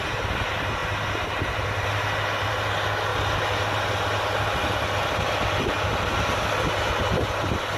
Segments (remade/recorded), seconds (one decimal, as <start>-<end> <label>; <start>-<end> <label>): 0.0-7.8 recorded